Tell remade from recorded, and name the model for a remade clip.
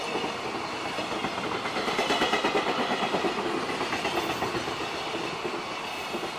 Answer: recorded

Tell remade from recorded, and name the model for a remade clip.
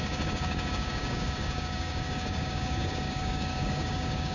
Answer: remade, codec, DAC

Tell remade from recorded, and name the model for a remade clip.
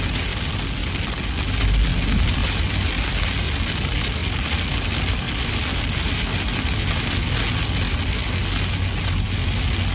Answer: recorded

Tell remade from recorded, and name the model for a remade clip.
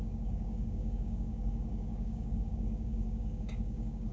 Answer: remade, codec, DAC